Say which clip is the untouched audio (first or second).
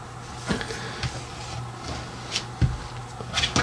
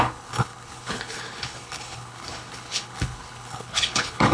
first